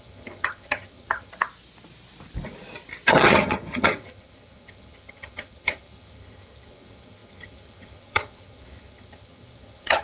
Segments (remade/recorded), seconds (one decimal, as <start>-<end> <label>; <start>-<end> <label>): 0.0-1.3 remade; 1.3-3.1 recorded; 3.1-10.0 remade